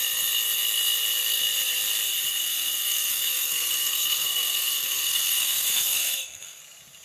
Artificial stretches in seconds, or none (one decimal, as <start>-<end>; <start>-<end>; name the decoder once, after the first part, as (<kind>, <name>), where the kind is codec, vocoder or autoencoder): 2.4-6.6 (codec, SNAC)